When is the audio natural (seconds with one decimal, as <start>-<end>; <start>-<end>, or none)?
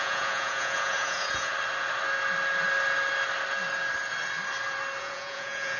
1.5-5.0